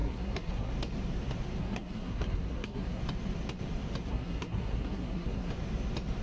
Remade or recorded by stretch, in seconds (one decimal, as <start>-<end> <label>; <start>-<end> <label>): 0.0-0.7 remade; 0.7-1.6 recorded; 1.6-3.0 remade; 3.0-4.1 recorded; 4.1-5.5 remade; 5.5-6.2 recorded